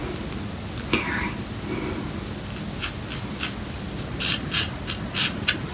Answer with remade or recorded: recorded